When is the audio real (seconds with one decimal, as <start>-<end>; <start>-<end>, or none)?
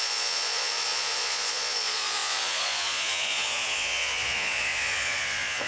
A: none